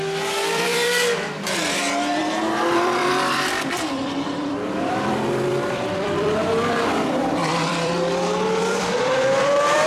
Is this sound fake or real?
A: fake